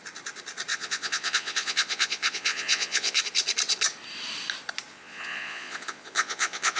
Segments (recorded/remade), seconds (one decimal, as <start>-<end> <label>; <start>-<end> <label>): 0.0-0.7 recorded; 0.7-3.2 remade; 3.2-4.9 recorded; 4.9-6.8 remade